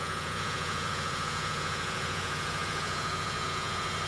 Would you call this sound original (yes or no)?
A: no